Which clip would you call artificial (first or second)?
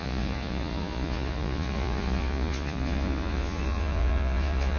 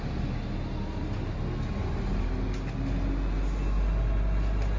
first